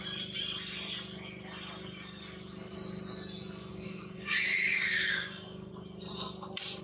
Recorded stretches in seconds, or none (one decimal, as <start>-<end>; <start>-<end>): 0.0-3.7; 5.7-6.8